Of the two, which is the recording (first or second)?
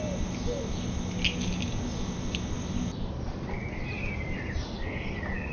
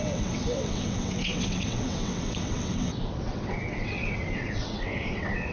first